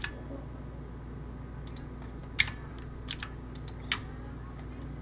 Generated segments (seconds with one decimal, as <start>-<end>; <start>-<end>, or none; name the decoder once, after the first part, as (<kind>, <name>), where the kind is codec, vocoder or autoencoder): none